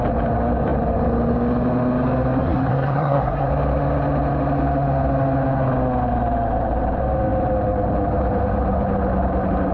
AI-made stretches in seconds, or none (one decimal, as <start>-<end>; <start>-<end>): 2.4-3.5